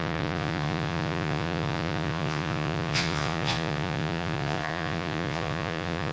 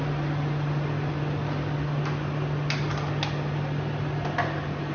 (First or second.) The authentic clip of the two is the second